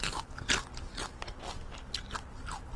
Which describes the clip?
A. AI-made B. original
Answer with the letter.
B